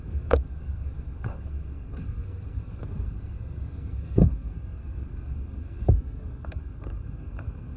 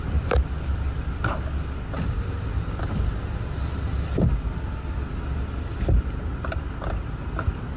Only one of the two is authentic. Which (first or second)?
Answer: second